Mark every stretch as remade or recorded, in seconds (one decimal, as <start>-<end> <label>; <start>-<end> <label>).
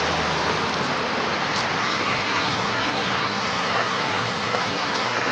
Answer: 0.0-1.8 recorded; 1.8-5.3 remade